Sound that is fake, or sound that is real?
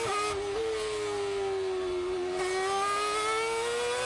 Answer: real